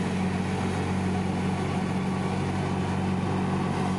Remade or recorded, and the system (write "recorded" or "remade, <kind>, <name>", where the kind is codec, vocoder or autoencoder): recorded